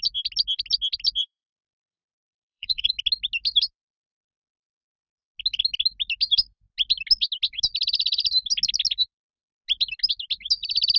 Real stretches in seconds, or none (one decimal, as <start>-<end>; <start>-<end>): 0.0-1.2; 2.9-11.0